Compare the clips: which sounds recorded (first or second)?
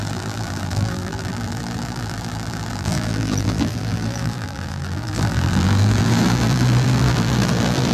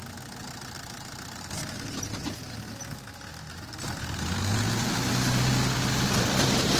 second